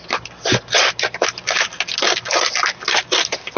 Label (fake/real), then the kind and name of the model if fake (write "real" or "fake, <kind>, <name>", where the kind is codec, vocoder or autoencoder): real